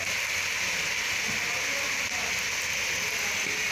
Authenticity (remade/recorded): recorded